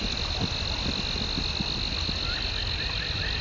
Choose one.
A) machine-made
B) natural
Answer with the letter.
B